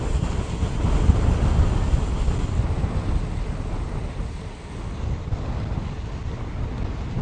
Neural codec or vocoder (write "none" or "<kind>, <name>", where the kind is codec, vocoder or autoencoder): none